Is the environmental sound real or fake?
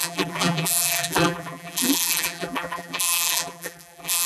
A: fake